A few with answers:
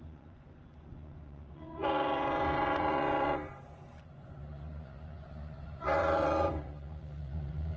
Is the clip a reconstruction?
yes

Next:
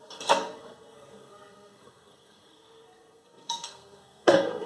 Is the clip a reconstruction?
yes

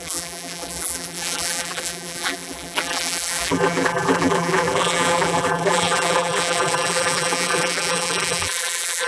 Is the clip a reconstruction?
yes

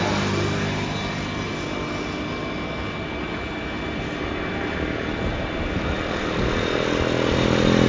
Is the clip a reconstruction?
no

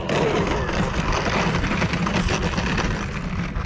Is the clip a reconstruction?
no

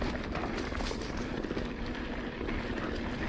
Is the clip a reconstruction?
no